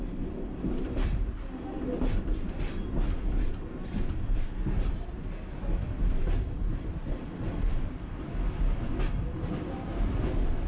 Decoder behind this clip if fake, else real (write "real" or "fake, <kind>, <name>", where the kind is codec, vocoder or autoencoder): real